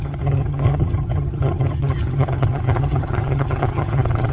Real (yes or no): no